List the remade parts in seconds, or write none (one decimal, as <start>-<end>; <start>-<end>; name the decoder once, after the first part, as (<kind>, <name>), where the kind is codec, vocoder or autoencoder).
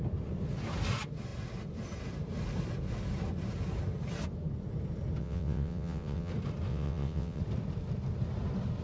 5.2-6.3 (vocoder, WaveNeXt); 6.7-7.4